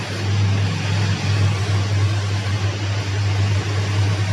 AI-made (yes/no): no